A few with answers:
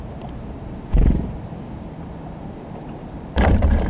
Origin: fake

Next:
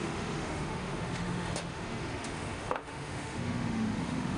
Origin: fake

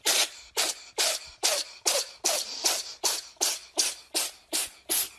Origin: real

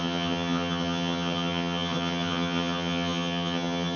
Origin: fake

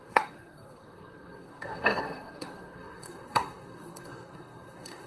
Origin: fake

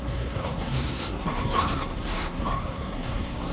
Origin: fake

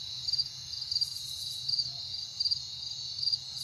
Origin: fake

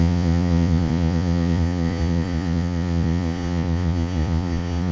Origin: fake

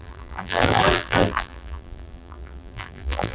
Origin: fake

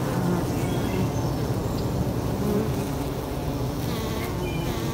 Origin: real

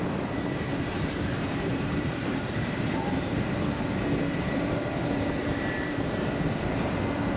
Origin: fake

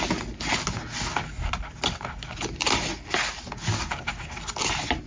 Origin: real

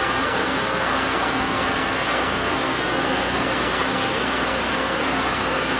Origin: fake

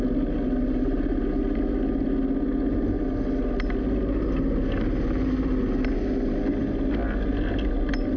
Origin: real